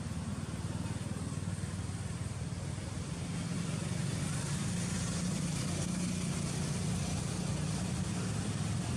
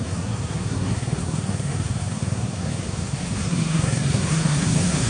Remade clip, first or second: second